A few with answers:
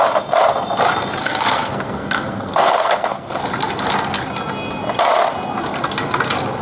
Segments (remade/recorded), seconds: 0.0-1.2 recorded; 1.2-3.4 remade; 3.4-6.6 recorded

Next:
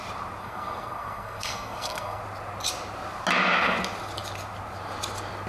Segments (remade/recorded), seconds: 0.0-0.4 recorded; 0.4-2.2 remade; 2.2-5.5 recorded

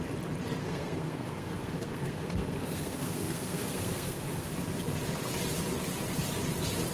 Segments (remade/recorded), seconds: 0.0-0.6 recorded; 0.6-4.5 remade; 4.5-6.9 recorded